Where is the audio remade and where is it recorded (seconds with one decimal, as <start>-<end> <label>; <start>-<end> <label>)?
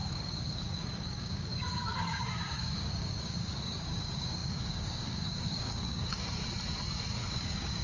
0.0-6.2 remade; 6.2-7.1 recorded; 7.1-7.8 remade